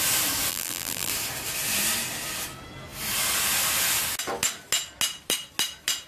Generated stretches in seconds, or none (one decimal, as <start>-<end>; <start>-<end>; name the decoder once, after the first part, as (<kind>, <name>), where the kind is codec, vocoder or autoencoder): 0.5-1.1 (vocoder, BigVGAN v2)